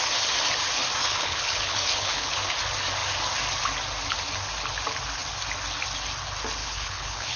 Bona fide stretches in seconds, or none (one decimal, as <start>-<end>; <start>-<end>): 0.0-1.0; 2.4-6.6